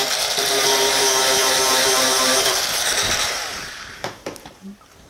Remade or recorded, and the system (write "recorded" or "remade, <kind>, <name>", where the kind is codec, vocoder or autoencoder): remade, vocoder, BigVGAN v2